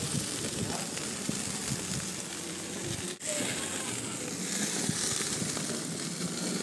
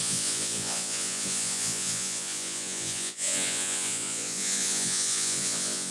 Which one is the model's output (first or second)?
second